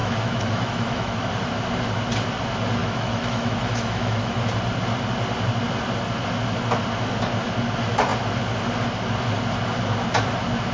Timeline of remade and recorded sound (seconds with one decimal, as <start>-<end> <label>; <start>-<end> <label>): 0.0-1.3 remade; 1.3-2.8 recorded; 2.8-4.4 remade; 4.4-10.7 recorded